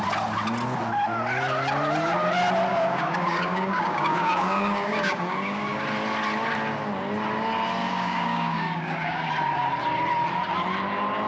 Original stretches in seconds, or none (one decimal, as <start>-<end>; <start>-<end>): 0.0-2.7; 5.8-7.8; 9.3-11.3